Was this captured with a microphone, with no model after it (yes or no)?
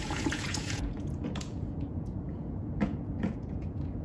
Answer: no